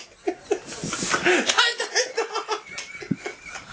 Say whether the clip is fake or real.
real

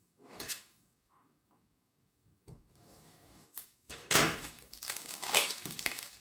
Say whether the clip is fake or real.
fake